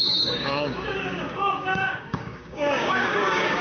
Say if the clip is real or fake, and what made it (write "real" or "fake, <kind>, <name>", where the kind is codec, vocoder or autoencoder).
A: fake, codec, DAC